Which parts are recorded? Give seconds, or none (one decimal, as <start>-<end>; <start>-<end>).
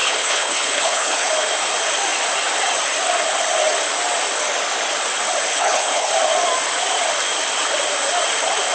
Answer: 1.3-5.5; 6.1-8.7